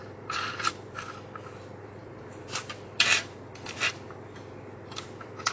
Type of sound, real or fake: fake